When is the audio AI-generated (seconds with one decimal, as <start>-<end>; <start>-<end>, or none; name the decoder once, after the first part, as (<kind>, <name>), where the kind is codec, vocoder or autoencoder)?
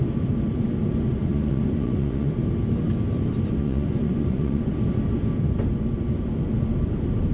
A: 1.3-2.3 (vocoder, Vocos); 3.6-4.7